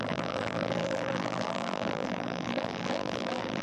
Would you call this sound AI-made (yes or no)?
yes